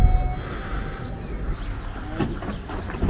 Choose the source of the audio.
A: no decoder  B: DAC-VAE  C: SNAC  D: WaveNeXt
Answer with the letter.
A